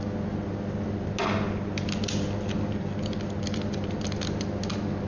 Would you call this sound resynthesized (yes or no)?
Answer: no